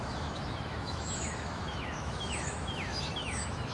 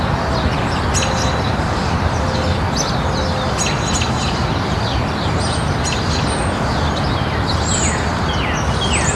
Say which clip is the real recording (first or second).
second